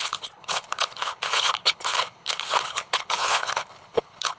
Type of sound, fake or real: fake